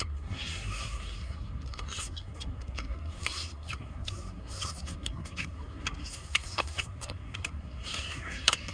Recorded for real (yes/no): no